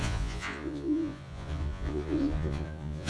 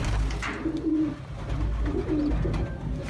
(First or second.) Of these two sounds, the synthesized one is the first